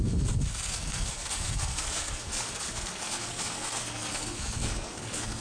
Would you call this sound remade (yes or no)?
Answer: yes